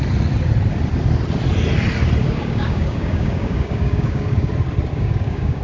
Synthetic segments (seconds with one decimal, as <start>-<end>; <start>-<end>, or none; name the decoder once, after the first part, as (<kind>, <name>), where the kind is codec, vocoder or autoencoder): 2.2-4.5 (codec, DAC); 4.9-5.6